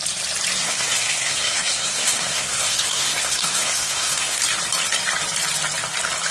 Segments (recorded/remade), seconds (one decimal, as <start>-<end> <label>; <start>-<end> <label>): 0.0-0.6 recorded; 0.6-4.4 remade; 4.4-6.3 recorded